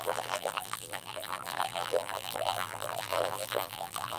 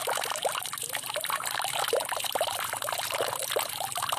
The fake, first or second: first